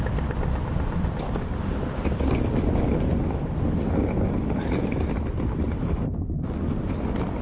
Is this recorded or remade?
recorded